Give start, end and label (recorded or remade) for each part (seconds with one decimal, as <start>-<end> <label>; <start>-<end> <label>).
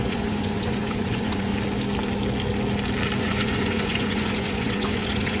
0.0-1.5 remade; 1.5-3.2 recorded; 3.2-5.4 remade